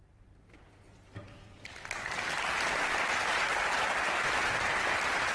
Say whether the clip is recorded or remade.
recorded